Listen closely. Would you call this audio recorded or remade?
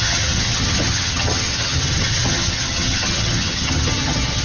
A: remade